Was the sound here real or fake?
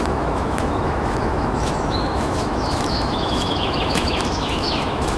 fake